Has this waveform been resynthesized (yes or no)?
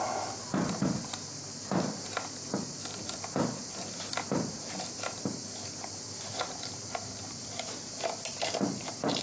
no